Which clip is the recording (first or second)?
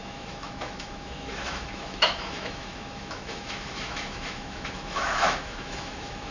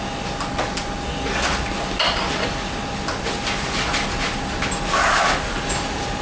second